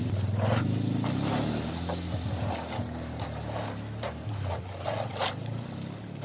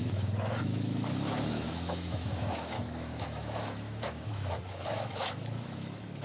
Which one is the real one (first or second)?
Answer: first